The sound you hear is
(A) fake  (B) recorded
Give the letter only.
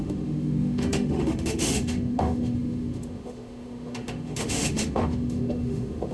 A